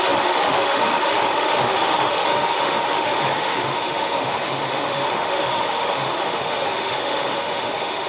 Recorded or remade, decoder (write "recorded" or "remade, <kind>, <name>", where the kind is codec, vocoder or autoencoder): remade, autoencoder, DAC-VAE